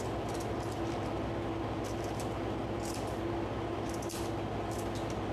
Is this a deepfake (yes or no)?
no